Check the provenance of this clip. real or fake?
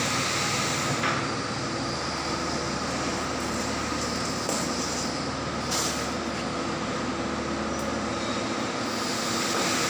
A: real